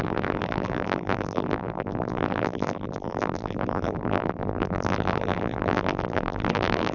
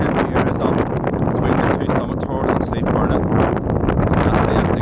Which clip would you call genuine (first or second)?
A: second